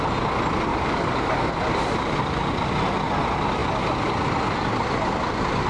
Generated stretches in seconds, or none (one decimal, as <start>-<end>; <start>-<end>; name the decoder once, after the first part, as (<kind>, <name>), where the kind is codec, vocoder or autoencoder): 0.7-1.5 (codec, DAC)